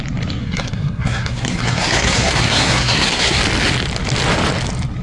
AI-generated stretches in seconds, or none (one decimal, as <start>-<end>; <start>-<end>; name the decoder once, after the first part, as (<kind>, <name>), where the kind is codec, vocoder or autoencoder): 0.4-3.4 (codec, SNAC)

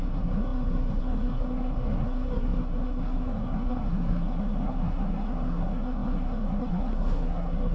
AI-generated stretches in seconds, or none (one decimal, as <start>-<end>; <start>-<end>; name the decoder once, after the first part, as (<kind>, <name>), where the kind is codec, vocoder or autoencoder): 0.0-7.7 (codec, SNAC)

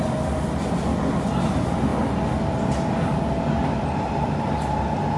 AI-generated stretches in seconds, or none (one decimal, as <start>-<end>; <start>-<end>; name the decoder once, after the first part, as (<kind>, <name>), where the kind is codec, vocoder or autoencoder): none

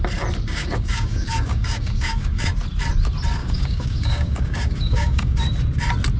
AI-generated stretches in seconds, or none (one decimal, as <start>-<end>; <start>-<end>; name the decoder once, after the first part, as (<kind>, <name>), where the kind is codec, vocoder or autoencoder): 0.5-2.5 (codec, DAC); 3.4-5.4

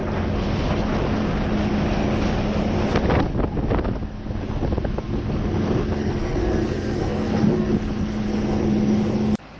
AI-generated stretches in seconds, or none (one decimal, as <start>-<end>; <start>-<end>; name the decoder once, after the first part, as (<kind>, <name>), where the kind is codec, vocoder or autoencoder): 6.0-7.7 (codec, SNAC)